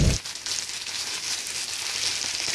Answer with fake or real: real